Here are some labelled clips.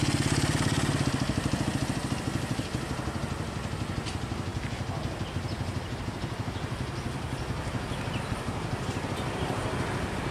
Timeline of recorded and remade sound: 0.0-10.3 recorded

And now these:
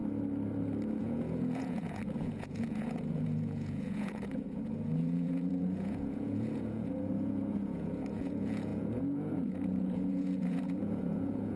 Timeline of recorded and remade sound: 0.0-1.0 recorded; 1.0-11.6 remade

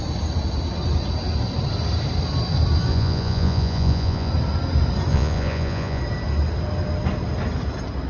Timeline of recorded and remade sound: 0.0-2.9 recorded; 2.9-4.3 remade; 4.3-5.1 recorded; 5.1-6.0 remade; 6.0-8.1 recorded